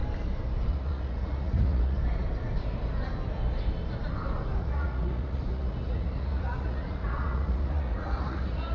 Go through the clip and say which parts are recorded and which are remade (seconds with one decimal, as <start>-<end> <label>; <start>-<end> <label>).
0.0-0.7 recorded; 0.7-2.0 remade; 2.0-4.6 recorded; 4.6-8.7 remade